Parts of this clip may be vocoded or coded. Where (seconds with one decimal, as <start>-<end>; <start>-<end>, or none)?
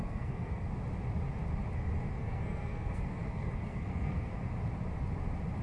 0.0-0.7; 2.1-4.3